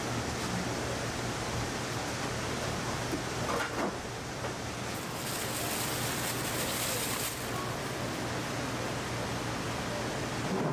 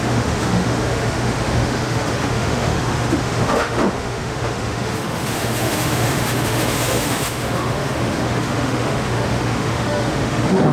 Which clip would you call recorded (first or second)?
first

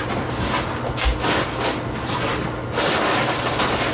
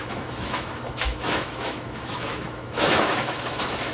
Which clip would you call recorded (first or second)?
first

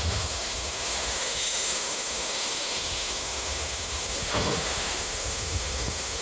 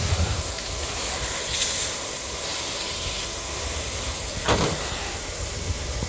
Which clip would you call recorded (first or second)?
second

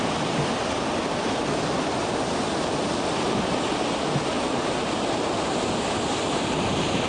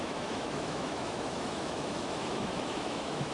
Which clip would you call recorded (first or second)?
first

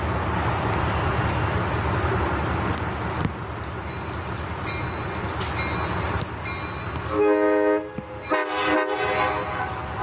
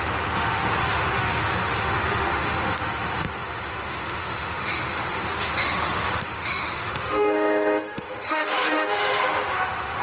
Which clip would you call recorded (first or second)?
first